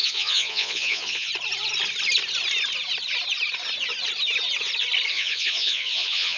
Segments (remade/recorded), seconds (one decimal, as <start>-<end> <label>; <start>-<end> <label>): 0.0-1.3 remade; 1.3-5.1 recorded; 5.1-6.4 remade